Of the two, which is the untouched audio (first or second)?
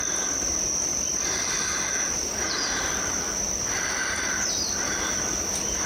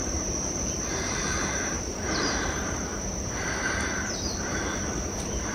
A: first